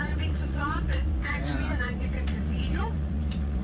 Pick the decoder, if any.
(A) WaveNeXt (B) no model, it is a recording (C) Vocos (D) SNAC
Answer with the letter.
C